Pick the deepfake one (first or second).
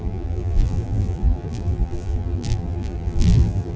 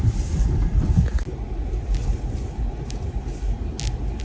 first